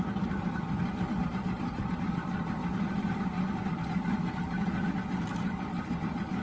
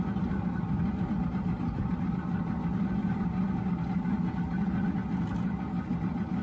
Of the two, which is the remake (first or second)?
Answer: first